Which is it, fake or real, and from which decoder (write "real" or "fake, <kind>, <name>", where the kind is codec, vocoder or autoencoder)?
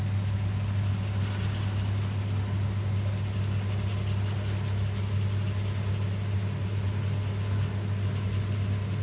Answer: real